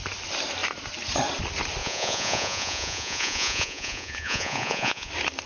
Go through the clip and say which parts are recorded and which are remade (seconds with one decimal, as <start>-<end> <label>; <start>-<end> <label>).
0.0-1.8 recorded; 1.8-5.1 remade; 5.1-5.5 recorded